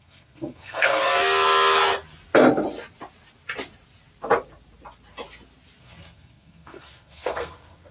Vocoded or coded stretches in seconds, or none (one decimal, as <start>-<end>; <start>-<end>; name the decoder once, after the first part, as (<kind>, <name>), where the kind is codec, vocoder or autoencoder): 0.0-1.1 (codec, SNAC); 5.8-7.9